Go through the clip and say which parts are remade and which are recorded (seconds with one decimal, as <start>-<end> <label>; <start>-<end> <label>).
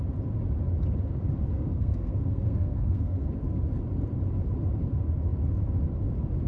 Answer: 0.0-1.5 recorded; 1.5-3.3 remade; 3.3-6.5 recorded